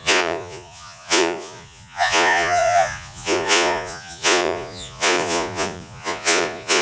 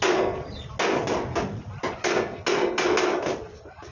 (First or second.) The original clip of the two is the second